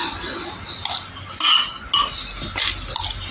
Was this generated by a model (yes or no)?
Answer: no